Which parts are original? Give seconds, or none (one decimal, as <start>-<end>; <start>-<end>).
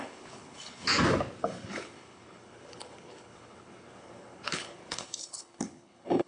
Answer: 0.9-1.4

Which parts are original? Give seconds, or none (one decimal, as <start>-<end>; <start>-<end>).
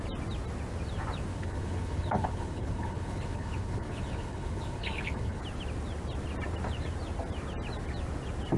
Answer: 0.0-1.3; 5.4-8.6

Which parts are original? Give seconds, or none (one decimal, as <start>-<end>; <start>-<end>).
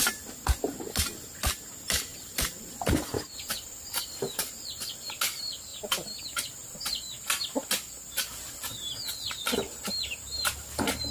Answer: 0.0-2.1; 5.1-11.1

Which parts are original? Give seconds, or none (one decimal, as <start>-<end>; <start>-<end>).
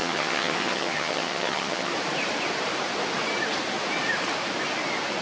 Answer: 1.9-5.2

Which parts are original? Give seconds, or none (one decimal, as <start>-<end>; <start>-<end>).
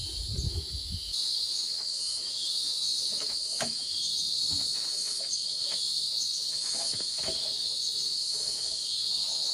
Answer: 0.0-0.5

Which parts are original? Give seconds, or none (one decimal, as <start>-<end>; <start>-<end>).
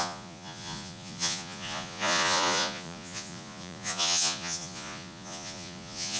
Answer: none